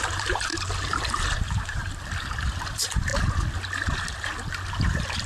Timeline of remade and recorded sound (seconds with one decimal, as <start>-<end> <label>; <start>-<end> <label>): 0.0-0.5 remade; 0.5-1.4 recorded; 1.4-1.8 remade; 1.8-2.7 recorded; 2.7-3.1 remade; 3.1-4.8 recorded; 4.8-5.3 remade